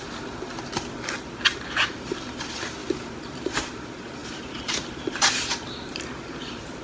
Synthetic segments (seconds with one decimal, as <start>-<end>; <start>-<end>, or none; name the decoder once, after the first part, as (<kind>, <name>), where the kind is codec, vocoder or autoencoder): 2.8-3.7 (vocoder, BigVGAN v2); 4.2-6.8